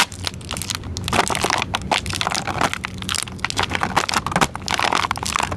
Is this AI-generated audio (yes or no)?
no